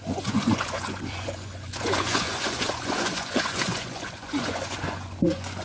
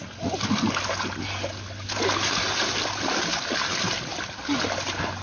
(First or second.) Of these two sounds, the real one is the second